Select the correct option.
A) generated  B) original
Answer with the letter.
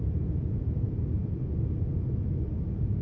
A